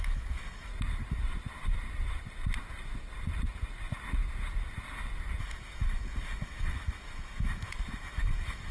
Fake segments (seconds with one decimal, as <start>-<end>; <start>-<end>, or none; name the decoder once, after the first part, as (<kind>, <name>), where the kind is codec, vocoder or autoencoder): 0.0-0.7 (autoencoder, DAC-VAE); 5.4-8.7